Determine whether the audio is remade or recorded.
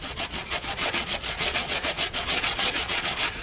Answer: remade